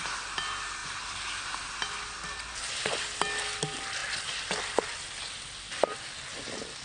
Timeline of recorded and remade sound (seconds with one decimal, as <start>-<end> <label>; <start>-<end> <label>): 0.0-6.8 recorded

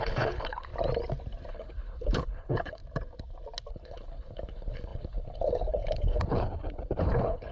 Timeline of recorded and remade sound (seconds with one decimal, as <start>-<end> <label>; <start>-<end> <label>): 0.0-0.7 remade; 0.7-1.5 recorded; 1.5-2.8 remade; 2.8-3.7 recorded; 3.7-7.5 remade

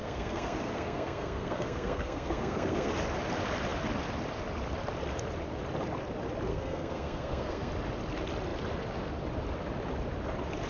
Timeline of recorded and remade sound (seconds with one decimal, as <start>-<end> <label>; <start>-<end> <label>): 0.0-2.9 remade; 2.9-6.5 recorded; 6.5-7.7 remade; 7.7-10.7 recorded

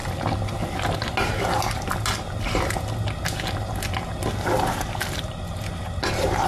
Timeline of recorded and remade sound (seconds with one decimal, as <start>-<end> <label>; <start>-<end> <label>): 0.0-6.5 recorded

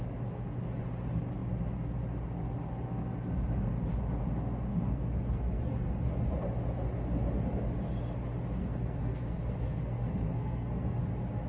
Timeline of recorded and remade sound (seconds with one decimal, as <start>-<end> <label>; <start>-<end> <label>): 0.0-4.7 recorded; 4.7-6.1 remade; 6.1-8.6 recorded; 8.6-11.0 remade; 11.0-11.5 recorded